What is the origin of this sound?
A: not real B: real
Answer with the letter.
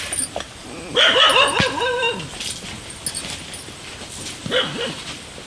B